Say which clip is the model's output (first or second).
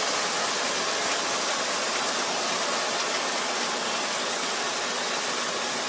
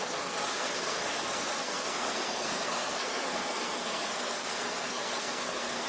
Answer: second